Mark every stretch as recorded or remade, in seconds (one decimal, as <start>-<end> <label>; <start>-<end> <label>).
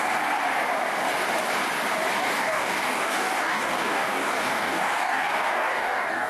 0.0-2.2 recorded; 2.2-6.3 remade